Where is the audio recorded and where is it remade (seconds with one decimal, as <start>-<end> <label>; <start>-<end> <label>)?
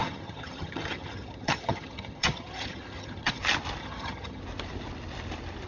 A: 0.0-3.4 remade; 3.4-3.8 recorded; 3.8-4.4 remade; 4.4-5.7 recorded